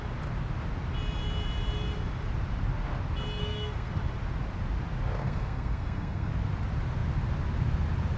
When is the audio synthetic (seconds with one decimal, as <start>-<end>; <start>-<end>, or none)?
3.4-3.9; 5.2-6.3